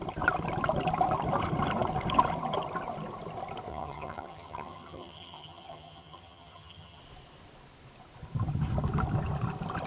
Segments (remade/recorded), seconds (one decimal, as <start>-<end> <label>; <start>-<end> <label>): 0.0-3.7 recorded; 3.7-7.0 remade; 7.0-9.9 recorded